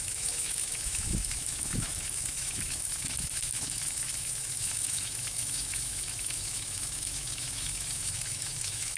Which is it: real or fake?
fake